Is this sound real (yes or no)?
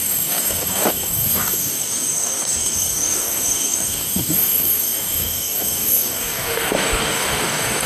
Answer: no